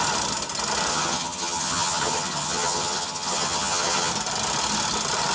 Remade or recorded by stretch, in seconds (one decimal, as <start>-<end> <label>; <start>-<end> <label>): 0.0-0.9 recorded; 0.9-4.1 remade; 4.1-5.3 recorded